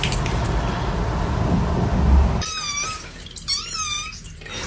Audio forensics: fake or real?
real